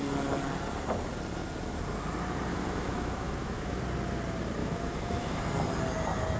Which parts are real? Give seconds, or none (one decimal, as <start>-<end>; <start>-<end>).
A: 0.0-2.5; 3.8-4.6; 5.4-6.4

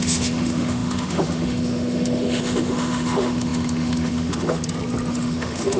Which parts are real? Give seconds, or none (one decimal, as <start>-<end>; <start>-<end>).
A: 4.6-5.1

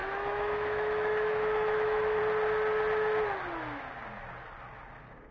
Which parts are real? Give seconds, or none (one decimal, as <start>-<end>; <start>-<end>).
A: 2.2-5.3

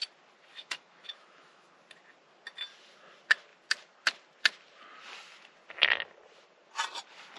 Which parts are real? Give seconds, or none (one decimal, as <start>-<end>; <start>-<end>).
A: 0.0-0.5; 1.7-7.4

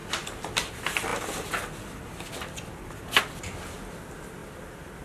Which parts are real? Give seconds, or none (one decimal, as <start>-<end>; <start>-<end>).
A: 0.0-5.0

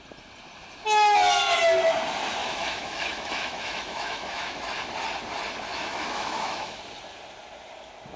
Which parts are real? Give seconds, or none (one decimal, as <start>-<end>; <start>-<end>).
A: 0.0-2.4; 4.6-5.7; 6.8-8.2

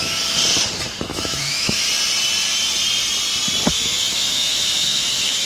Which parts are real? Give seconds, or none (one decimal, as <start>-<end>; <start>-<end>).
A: 0.0-1.1; 1.8-3.7